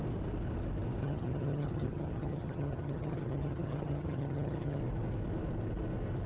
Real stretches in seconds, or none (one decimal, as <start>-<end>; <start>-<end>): 0.0-1.0; 4.8-6.3